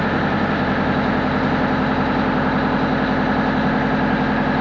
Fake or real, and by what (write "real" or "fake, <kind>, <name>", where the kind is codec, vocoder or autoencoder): real